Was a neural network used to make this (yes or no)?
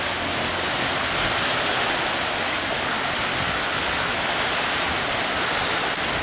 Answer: no